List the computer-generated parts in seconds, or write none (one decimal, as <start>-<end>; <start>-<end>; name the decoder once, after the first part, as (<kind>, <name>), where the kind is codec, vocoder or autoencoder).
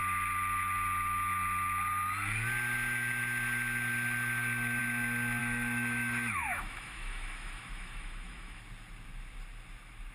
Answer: 5.4-8.6 (autoencoder, DAC-VAE)